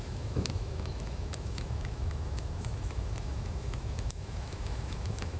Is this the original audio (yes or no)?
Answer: no